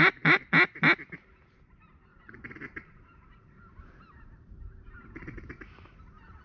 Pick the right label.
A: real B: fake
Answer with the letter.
A